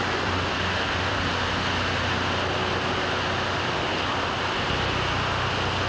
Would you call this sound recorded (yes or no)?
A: yes